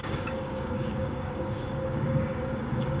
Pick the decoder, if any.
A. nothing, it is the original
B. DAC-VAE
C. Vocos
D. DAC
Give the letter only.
D